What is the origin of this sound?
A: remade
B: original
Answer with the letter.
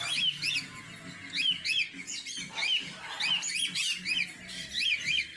B